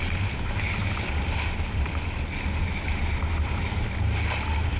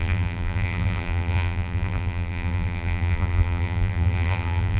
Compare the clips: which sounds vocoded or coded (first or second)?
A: second